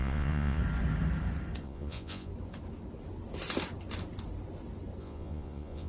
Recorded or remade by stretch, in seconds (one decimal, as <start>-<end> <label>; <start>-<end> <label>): 0.0-0.6 remade; 0.6-1.6 recorded; 1.6-2.3 remade; 2.3-5.0 recorded; 5.0-5.9 remade